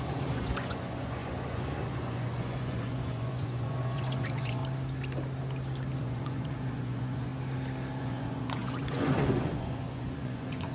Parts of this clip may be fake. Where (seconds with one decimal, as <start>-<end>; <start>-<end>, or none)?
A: 0.0-4.6; 6.0-7.3; 8.0-10.7